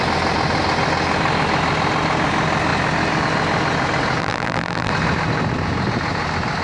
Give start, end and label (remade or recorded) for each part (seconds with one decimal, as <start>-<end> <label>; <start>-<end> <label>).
0.0-4.2 recorded; 4.2-4.9 remade; 4.9-6.6 recorded